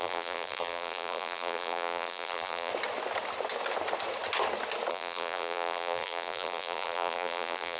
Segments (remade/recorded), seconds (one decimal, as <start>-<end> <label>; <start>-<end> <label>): 0.0-2.7 remade; 2.7-4.9 recorded; 4.9-7.8 remade

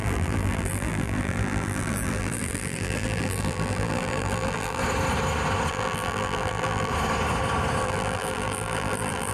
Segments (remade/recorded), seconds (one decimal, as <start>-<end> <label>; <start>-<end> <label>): 0.0-4.8 remade; 4.8-5.7 recorded; 5.7-6.9 remade; 6.9-7.8 recorded; 7.8-9.3 remade

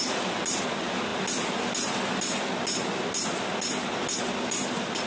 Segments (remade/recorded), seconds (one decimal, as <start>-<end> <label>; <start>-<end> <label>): 0.0-5.1 recorded

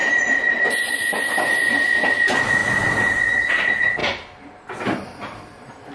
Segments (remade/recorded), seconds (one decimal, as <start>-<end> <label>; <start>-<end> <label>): 0.0-0.9 remade; 0.9-2.6 recorded; 2.6-3.2 remade; 3.2-5.9 recorded

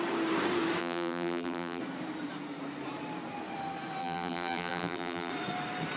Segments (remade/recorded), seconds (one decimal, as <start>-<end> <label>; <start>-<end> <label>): 0.0-0.8 recorded; 0.8-1.8 remade; 1.8-4.0 recorded; 4.0-5.3 remade; 5.3-6.0 recorded

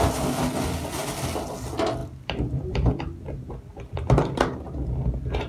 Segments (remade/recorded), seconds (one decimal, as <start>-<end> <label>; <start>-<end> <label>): 0.0-2.0 recorded; 2.0-2.9 remade; 2.9-3.7 recorded; 3.7-4.3 remade; 4.3-5.5 recorded

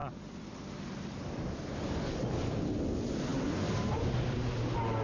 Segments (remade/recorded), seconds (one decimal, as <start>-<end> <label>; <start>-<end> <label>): 0.0-2.6 remade; 2.6-3.3 recorded; 3.3-4.6 remade; 4.6-5.0 recorded

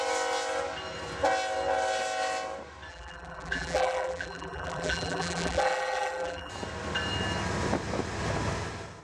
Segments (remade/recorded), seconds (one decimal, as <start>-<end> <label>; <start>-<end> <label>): 0.0-2.9 recorded; 2.9-6.5 remade; 6.5-9.0 recorded